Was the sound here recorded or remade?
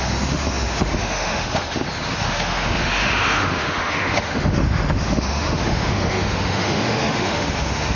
remade